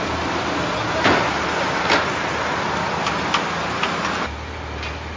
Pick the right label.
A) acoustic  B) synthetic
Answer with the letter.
A